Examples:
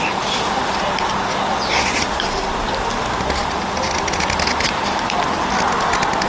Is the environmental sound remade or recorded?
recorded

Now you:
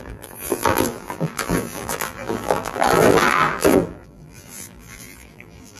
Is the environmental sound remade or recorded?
remade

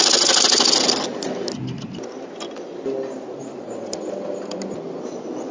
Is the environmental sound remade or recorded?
recorded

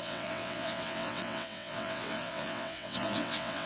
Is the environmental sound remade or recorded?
remade